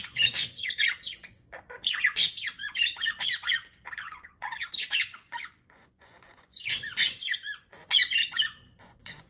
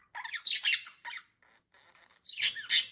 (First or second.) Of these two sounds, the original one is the second